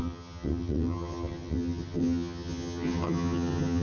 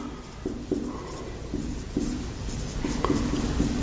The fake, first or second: first